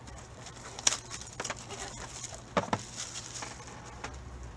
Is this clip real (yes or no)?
yes